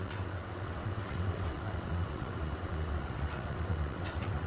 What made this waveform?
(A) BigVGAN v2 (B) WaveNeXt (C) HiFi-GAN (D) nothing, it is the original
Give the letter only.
B